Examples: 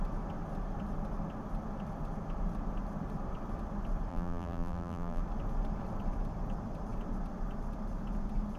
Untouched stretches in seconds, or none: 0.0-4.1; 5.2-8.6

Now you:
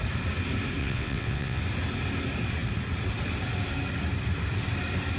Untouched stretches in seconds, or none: 0.0-0.8; 1.6-5.2

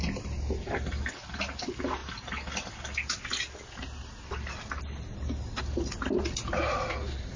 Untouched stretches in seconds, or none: 0.0-7.4

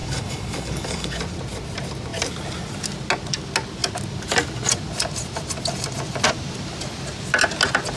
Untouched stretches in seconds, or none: 1.2-8.0

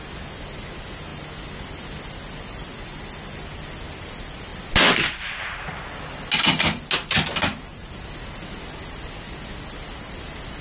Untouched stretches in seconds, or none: 0.0-10.6

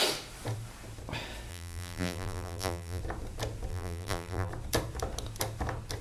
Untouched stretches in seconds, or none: 0.0-1.5; 3.0-3.7; 4.5-6.0

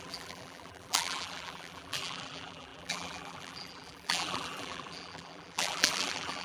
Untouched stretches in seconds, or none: none